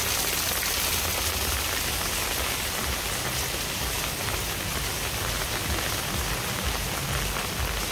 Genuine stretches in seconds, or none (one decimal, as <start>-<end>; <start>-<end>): 0.0-7.9